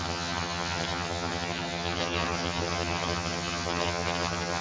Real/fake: fake